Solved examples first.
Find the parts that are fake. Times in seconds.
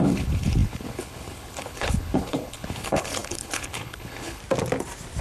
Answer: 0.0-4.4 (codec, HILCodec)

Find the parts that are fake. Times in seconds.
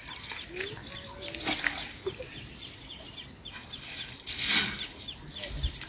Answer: none